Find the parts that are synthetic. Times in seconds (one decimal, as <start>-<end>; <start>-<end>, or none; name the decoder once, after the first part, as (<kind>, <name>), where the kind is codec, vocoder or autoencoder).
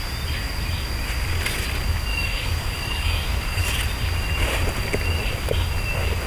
2.1-3.6 (codec, DAC)